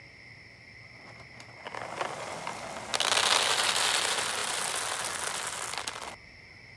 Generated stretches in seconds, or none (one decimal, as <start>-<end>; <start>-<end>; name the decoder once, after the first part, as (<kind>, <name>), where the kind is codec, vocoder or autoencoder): none